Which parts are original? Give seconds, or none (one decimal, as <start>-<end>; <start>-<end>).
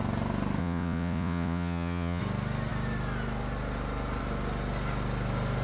0.0-0.6; 2.2-5.6